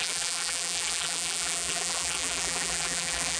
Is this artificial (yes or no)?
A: yes